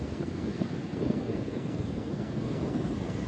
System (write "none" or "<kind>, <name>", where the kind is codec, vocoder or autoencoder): codec, SNAC